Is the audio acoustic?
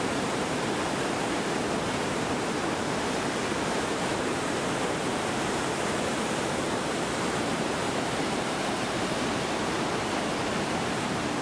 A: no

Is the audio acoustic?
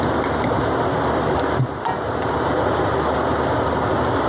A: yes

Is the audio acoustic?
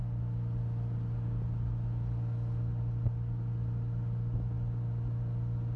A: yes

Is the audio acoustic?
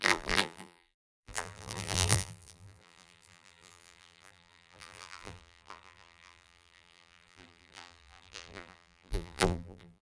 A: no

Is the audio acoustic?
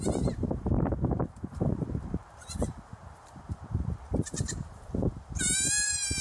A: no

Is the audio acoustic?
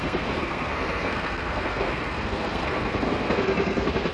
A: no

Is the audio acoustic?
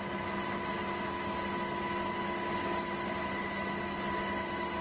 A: yes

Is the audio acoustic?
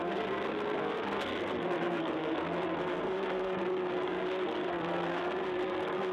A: no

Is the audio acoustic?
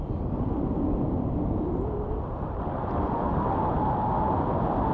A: yes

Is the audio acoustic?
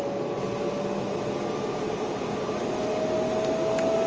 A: yes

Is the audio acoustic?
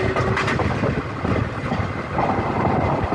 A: yes